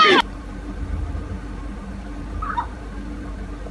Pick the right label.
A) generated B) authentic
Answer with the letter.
A